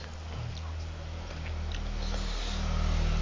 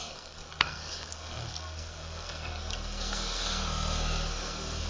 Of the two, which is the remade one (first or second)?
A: second